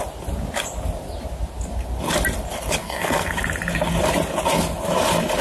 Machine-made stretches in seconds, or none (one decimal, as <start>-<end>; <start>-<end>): 2.8-3.3